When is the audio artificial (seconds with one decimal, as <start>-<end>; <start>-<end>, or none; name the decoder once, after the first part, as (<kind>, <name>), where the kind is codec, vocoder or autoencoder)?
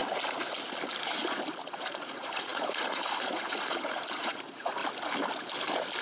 1.7-4.8 (vocoder, Vocos)